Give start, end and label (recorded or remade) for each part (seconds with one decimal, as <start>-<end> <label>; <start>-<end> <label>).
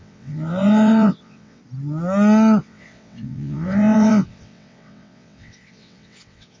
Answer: 0.0-1.6 remade; 1.6-2.6 recorded; 2.6-6.6 remade